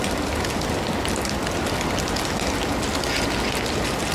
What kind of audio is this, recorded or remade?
recorded